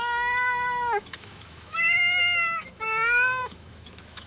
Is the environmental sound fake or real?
fake